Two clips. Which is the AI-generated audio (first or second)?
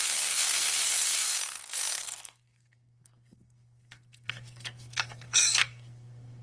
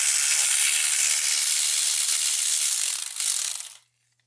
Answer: first